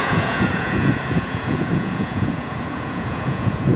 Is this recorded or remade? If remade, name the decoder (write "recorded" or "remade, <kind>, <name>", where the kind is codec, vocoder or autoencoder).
remade, vocoder, Vocos